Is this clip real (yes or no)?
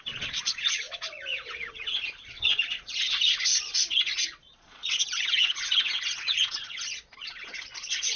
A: no